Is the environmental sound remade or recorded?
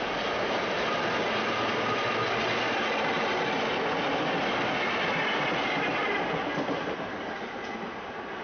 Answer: recorded